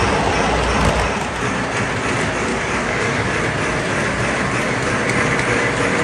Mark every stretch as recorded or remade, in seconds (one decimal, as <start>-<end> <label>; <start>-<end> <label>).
0.0-2.5 recorded; 2.5-3.4 remade; 3.4-6.0 recorded